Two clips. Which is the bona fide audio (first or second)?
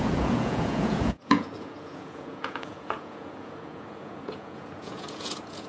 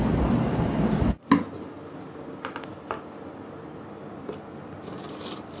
second